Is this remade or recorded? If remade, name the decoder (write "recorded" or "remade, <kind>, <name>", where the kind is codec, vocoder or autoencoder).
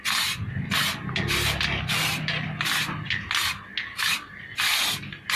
recorded